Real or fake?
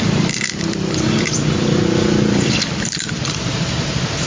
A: fake